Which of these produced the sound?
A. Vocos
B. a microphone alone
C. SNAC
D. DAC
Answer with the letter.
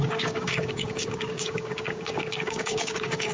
D